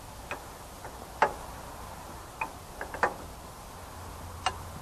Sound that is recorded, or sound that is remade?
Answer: recorded